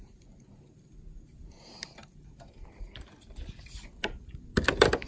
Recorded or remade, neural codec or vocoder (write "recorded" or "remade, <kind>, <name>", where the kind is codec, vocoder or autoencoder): recorded